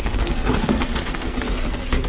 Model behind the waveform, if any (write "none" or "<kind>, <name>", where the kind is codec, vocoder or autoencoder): codec, SNAC